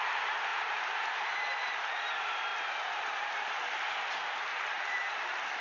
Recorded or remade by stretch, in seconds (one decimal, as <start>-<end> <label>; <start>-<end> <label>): 0.0-0.5 recorded; 0.5-2.1 remade; 2.1-4.5 recorded; 4.5-5.1 remade; 5.1-5.6 recorded